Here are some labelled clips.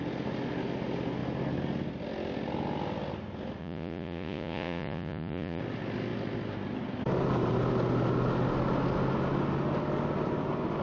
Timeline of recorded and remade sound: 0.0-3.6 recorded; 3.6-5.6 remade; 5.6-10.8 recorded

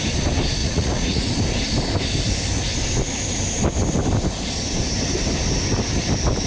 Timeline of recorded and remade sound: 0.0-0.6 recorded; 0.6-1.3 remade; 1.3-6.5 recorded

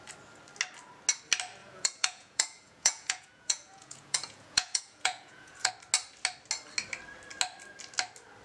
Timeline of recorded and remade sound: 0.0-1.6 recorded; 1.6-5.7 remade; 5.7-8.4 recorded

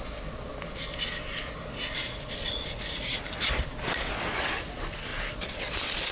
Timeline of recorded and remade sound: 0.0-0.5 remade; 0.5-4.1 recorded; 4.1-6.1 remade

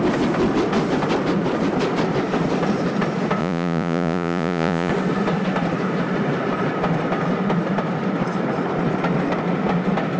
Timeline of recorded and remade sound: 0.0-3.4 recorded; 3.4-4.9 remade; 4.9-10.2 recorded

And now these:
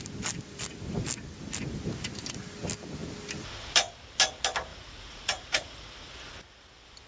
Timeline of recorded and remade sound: 0.0-4.7 recorded; 4.7-6.3 remade; 6.3-7.1 recorded

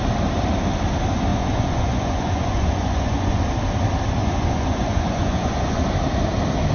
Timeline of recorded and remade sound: 0.0-1.3 recorded; 1.3-3.4 remade; 3.4-4.2 recorded; 4.2-5.8 remade; 5.8-6.7 recorded

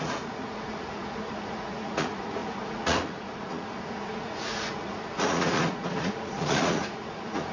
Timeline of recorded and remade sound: 0.0-7.5 remade